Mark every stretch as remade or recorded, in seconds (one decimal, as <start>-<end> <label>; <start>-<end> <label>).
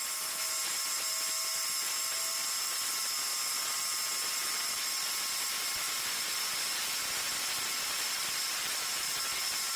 0.0-9.8 recorded